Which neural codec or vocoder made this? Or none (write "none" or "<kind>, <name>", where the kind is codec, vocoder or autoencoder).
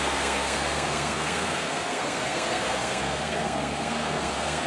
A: codec, SNAC